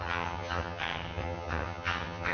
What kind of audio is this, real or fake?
fake